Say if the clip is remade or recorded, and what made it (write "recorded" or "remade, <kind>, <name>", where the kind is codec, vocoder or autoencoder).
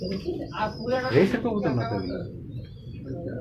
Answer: remade, vocoder, BigVGAN v2